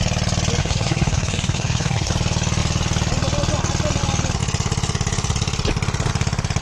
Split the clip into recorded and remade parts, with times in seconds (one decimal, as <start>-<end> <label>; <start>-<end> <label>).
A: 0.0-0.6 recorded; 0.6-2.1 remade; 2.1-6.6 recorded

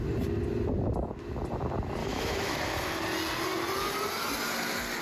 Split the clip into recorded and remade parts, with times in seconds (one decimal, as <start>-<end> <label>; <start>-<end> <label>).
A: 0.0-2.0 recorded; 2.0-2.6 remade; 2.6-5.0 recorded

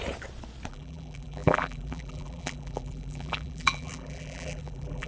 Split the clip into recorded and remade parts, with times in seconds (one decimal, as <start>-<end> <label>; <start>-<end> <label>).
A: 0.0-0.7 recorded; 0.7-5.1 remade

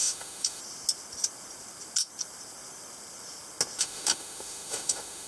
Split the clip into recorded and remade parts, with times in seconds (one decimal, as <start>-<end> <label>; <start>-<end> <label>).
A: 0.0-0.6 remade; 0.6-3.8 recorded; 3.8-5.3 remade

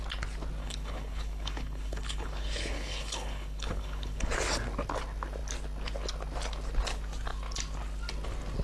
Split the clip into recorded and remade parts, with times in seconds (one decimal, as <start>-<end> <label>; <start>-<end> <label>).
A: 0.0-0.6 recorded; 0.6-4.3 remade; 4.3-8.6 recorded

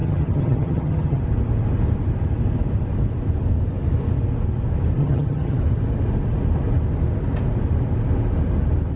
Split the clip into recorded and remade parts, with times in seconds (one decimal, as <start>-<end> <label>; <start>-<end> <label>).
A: 0.0-1.2 remade; 1.2-5.0 recorded; 5.0-5.6 remade; 5.6-9.0 recorded